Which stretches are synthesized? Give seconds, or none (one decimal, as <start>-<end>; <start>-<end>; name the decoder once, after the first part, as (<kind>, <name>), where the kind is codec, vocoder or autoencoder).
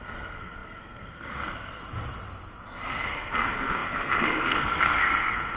0.0-1.8 (codec, SNAC); 2.6-5.6